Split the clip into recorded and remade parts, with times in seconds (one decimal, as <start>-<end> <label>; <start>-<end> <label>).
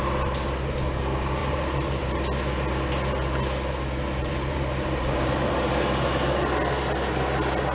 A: 0.0-1.4 recorded; 1.4-2.2 remade; 2.2-4.2 recorded; 4.2-5.5 remade; 5.5-7.7 recorded